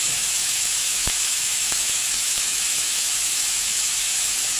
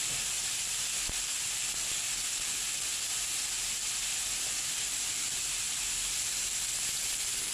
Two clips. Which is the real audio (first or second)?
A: second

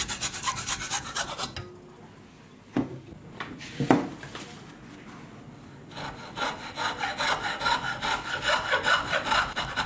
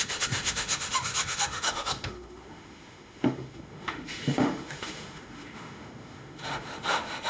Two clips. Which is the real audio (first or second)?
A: first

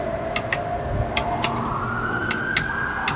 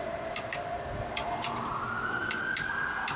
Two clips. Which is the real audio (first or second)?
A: first